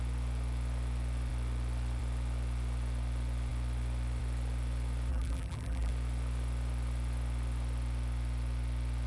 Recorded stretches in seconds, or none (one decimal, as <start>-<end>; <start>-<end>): 0.0-5.1; 5.9-9.1